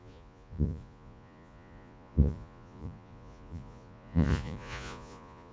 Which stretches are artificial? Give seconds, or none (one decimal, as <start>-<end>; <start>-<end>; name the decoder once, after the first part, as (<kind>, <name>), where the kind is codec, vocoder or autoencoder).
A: 0.0-5.5 (vocoder, Vocos)